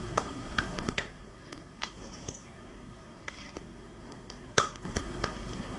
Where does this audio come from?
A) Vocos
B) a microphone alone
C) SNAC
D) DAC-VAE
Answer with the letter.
C